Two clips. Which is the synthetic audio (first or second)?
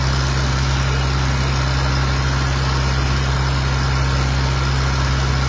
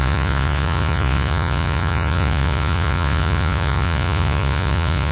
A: second